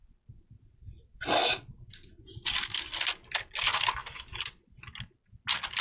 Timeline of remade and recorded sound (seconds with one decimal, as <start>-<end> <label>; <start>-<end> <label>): 0.0-4.0 recorded; 4.0-4.8 remade; 4.8-5.8 recorded